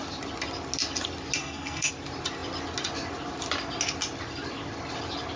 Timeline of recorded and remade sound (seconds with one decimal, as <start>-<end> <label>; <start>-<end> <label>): 0.0-1.4 recorded; 1.4-1.9 remade; 1.9-5.4 recorded